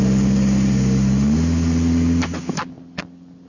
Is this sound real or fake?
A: real